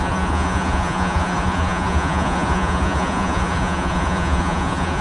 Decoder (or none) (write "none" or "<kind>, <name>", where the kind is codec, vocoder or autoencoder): vocoder, Vocos